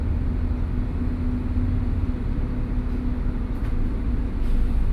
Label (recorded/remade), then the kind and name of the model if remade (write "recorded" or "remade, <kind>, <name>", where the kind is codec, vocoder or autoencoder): recorded